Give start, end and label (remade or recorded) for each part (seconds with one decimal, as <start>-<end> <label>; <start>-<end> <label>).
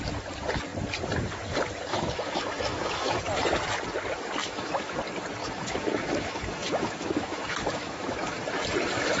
0.0-1.9 recorded; 1.9-3.2 remade; 3.2-4.4 recorded; 4.4-5.0 remade; 5.0-5.4 recorded; 5.4-8.4 remade; 8.4-9.2 recorded